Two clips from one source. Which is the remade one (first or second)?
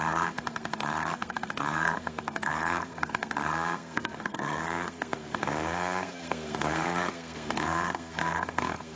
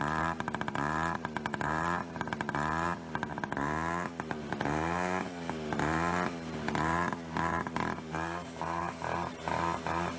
first